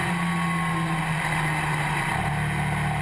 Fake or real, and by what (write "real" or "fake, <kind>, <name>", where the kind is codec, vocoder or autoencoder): real